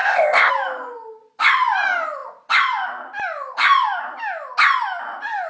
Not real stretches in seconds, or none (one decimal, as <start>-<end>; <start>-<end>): 0.0-0.5